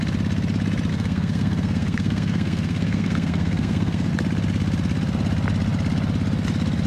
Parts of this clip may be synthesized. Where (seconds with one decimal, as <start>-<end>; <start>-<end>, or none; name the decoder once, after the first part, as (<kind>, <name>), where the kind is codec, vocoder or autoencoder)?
0.9-4.1 (codec, SNAC)